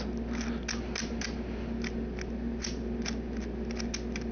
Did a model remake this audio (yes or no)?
no